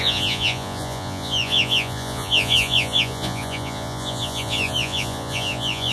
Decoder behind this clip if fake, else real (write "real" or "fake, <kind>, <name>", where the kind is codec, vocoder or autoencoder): fake, vocoder, Vocos